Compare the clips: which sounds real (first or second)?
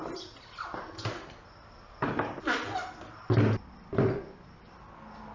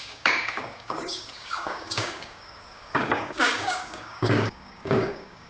first